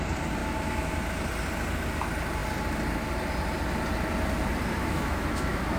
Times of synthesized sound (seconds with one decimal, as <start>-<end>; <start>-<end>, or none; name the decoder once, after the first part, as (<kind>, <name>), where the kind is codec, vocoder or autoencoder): 0.4-0.9 (autoencoder, DAC-VAE); 4.8-5.8